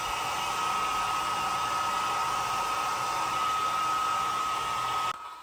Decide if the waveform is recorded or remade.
recorded